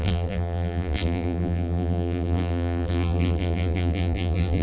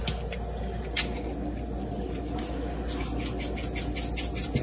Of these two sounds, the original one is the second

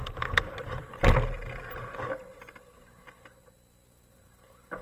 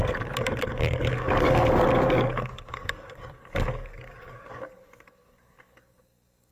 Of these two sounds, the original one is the first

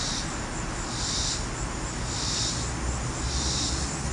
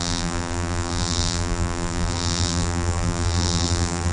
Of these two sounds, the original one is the first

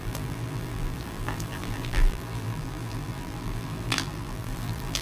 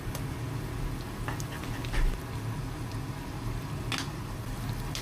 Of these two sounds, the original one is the second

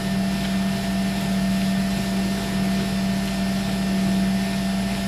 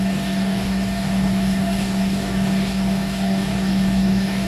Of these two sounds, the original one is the first